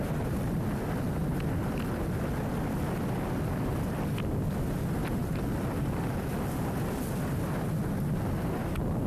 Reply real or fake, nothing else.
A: real